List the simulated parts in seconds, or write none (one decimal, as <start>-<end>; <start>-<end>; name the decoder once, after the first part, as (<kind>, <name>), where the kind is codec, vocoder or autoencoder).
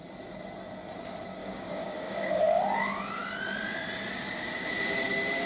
1.4-2.6 (codec, DAC)